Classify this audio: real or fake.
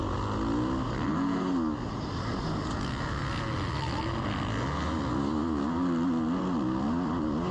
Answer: real